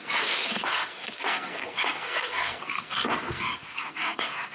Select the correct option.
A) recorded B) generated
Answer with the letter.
B